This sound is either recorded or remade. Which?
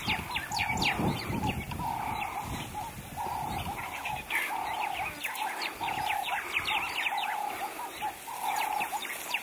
recorded